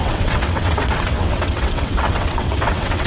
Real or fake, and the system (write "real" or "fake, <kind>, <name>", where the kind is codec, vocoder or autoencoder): fake, vocoder, WaveNeXt